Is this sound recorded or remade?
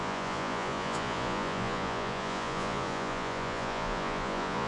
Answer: remade